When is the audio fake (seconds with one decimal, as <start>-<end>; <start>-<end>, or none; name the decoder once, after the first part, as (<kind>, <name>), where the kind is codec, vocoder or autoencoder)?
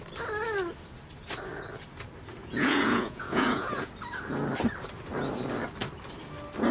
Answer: 2.4-3.9 (vocoder, Vocos)